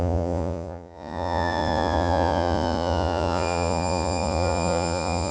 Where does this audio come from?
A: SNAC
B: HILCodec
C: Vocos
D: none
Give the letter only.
C